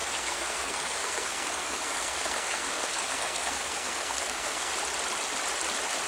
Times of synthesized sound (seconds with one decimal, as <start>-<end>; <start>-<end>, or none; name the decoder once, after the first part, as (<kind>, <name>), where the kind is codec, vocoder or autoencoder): 0.0-4.7 (codec, SNAC)